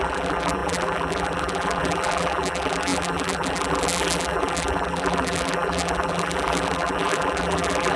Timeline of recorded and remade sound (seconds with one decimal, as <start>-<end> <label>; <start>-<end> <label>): 0.0-8.0 remade